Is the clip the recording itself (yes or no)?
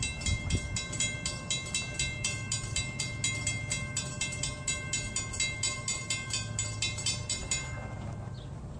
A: yes